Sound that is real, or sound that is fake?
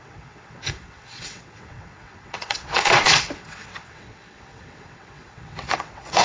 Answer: fake